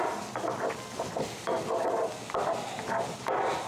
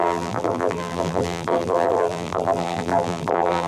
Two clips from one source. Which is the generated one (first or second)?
second